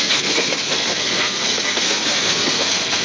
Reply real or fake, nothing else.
fake